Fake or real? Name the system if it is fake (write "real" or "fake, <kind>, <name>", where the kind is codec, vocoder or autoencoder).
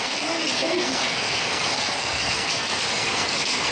fake, codec, SNAC